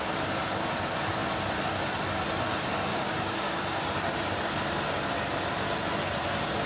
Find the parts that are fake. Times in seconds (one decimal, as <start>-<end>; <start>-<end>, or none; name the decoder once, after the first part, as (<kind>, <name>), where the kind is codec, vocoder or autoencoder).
2.9-3.8 (codec, DAC)